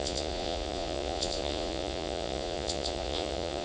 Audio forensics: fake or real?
fake